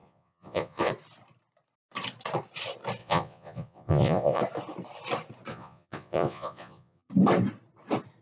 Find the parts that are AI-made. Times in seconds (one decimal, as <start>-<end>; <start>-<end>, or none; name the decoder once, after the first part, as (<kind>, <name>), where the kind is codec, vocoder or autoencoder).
0.0-0.9 (vocoder, Vocos); 3.0-4.4; 5.5-7.1

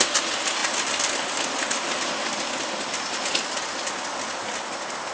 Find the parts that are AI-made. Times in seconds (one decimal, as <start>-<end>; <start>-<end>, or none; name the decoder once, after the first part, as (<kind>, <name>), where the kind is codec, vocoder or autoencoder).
none

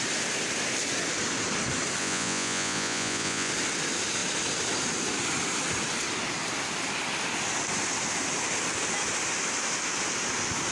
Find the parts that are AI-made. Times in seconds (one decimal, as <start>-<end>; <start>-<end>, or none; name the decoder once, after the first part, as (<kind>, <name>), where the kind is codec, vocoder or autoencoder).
2.0-3.5 (vocoder, Vocos)

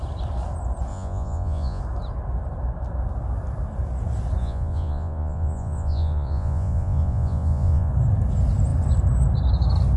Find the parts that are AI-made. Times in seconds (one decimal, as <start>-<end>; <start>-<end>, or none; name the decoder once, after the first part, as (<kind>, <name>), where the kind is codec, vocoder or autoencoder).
0.9-1.8 (vocoder, Vocos); 4.4-7.9

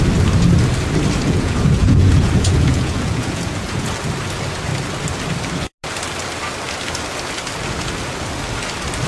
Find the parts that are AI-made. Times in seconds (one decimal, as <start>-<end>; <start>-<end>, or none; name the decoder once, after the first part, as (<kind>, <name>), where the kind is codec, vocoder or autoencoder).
1.2-3.9 (vocoder, Vocos)

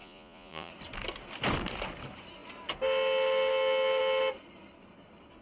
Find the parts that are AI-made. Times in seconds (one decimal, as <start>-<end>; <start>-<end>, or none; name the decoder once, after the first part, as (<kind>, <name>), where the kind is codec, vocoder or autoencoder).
0.0-0.7 (vocoder, Vocos)